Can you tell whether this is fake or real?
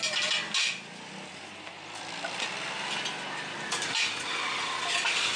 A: real